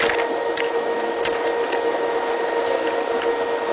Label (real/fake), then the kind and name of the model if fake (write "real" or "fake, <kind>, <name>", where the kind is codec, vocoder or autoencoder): real